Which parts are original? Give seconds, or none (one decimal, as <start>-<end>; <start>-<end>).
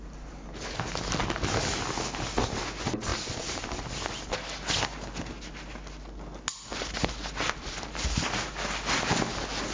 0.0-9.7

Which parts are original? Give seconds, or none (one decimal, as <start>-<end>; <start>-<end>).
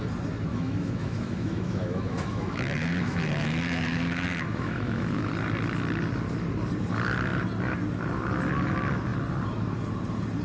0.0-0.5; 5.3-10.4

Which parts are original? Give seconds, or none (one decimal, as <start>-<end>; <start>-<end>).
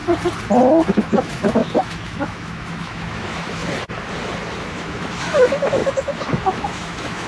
0.0-0.8; 3.6-4.6